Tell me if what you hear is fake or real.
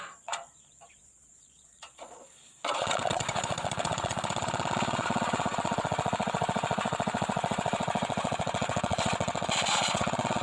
fake